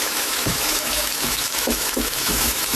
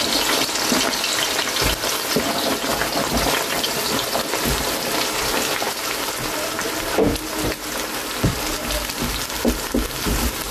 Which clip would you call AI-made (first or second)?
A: first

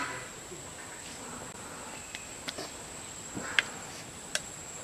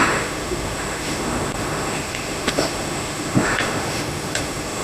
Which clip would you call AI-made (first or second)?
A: second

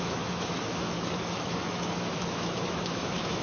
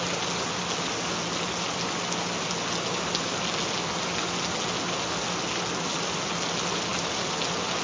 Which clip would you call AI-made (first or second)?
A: first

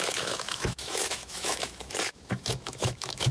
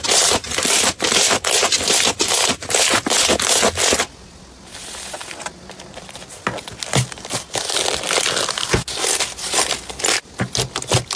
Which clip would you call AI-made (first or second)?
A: first